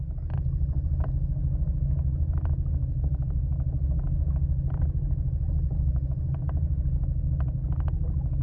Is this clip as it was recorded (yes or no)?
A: yes